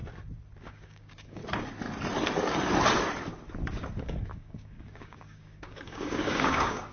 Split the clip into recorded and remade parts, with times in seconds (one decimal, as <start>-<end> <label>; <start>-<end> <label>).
0.0-0.6 recorded; 0.6-1.4 remade; 1.4-4.0 recorded; 4.0-6.9 remade